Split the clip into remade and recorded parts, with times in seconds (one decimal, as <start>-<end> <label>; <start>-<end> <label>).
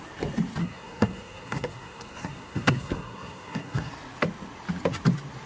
0.0-0.6 recorded; 0.6-3.9 remade; 3.9-5.5 recorded